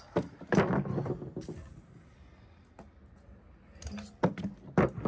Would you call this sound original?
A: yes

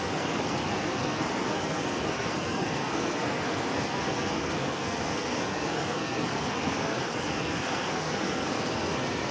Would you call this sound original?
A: no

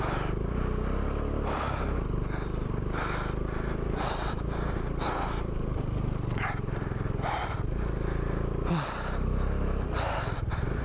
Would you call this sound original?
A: yes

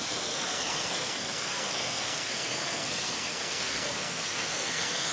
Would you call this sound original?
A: no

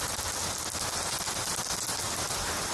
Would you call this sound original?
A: yes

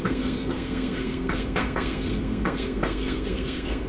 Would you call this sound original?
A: no